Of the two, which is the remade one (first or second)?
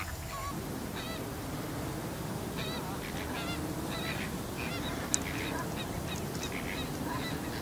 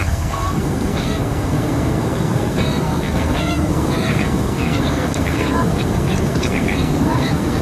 second